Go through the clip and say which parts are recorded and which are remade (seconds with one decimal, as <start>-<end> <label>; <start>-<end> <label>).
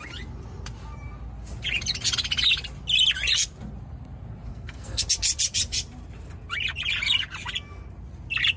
0.0-4.5 recorded; 4.5-5.0 remade; 5.0-8.6 recorded